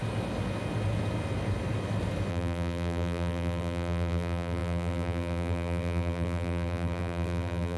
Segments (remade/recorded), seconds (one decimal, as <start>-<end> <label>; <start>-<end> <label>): 0.0-2.3 recorded; 2.3-7.8 remade